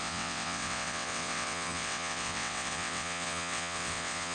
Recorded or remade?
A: remade